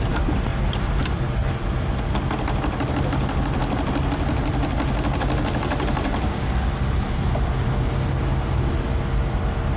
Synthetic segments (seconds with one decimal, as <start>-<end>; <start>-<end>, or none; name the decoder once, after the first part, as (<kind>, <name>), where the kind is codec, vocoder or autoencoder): none